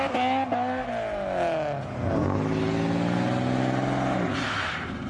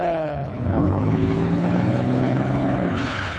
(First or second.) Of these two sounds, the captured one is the first